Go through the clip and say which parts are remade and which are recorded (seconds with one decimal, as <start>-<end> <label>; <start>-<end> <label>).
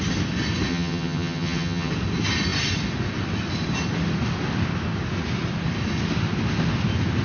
0.0-0.7 recorded; 0.7-1.9 remade; 1.9-7.2 recorded